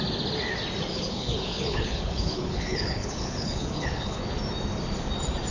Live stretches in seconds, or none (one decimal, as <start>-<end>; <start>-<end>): 0.0-0.9; 4.2-5.5